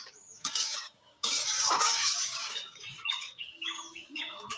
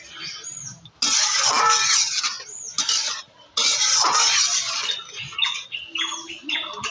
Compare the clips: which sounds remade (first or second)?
first